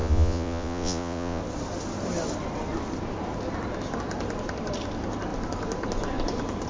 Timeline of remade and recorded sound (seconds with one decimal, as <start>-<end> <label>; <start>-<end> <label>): 0.0-1.4 remade; 1.4-6.7 recorded